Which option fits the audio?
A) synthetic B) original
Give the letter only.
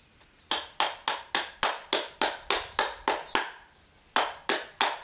B